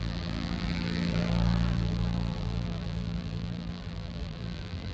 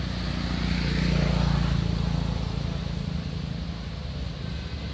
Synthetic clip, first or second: first